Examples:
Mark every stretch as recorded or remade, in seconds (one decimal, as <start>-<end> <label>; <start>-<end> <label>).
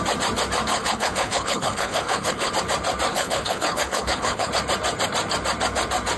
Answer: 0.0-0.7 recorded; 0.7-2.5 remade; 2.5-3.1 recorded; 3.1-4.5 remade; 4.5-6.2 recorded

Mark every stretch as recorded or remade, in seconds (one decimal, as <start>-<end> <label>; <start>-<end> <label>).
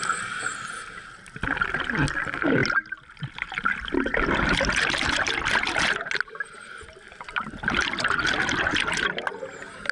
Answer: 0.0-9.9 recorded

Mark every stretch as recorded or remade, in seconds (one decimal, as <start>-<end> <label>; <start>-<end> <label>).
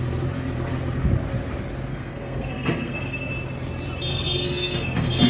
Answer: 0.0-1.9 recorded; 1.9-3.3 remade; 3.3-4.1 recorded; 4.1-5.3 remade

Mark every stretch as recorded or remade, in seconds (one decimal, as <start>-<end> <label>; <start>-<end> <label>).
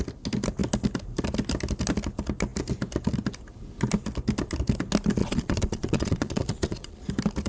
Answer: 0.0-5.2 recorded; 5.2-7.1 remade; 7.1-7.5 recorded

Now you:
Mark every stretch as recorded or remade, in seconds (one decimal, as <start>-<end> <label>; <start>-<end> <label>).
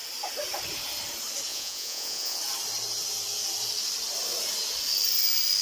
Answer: 0.0-1.5 recorded; 1.5-2.4 remade; 2.4-5.6 recorded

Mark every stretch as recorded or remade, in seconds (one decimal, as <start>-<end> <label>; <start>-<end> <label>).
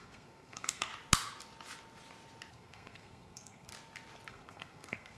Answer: 0.0-0.9 remade; 0.9-2.5 recorded; 2.5-3.7 remade; 3.7-4.3 recorded; 4.3-5.2 remade